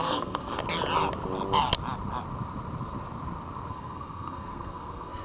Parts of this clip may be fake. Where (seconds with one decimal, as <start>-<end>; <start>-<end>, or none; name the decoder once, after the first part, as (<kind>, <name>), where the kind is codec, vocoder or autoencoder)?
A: 0.0-0.6 (codec, SNAC); 3.7-5.2